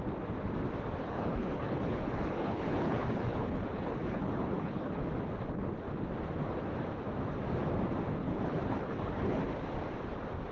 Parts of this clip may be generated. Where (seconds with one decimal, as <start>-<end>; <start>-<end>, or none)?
1.0-5.1; 8.2-9.4